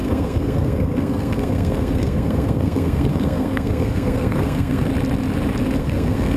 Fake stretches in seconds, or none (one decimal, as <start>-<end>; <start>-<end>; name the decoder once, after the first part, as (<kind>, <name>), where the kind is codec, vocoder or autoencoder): 0.0-4.9 (codec, SNAC); 5.8-6.4